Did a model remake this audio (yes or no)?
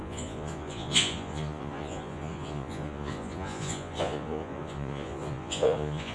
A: yes